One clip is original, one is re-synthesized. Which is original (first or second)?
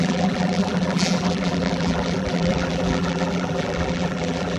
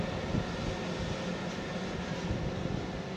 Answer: second